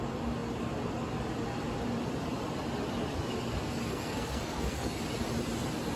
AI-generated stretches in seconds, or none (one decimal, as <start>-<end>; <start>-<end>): 3.9-5.0